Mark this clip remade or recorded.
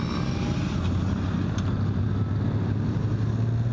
recorded